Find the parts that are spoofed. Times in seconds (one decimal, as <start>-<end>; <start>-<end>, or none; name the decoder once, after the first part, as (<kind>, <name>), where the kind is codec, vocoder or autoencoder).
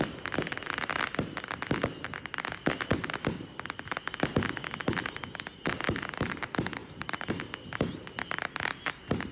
6.8-7.3 (vocoder, BigVGAN v2)